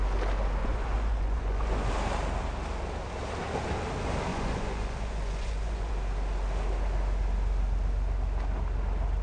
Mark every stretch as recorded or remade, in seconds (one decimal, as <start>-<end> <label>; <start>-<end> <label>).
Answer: 0.0-0.6 recorded; 0.6-1.9 remade; 1.9-4.3 recorded; 4.3-5.9 remade; 5.9-9.2 recorded